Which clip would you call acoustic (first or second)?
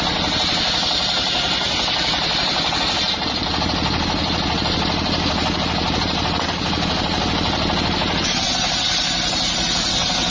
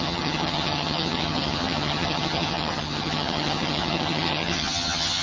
first